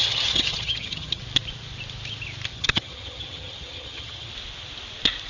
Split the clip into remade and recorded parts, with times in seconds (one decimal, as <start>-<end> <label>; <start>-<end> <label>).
0.0-1.2 remade; 1.2-2.5 recorded; 2.5-4.3 remade; 4.3-5.3 recorded